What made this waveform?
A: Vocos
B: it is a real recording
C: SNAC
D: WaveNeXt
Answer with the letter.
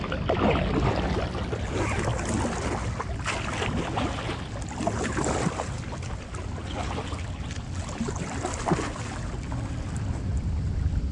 B